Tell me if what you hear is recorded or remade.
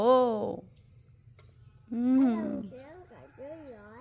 recorded